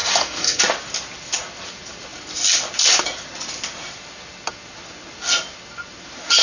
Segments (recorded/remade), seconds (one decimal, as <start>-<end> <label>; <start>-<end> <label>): 0.0-0.6 remade; 0.6-6.4 recorded